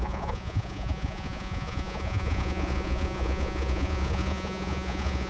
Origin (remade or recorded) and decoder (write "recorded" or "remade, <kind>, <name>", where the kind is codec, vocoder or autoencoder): remade, vocoder, Vocos